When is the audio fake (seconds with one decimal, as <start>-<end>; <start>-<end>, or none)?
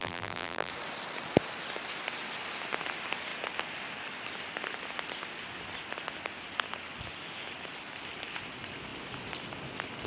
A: 0.0-0.7